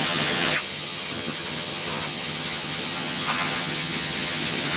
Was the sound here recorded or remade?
remade